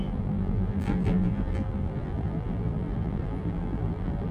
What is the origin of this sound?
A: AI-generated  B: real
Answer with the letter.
A